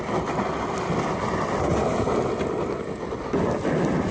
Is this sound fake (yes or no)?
no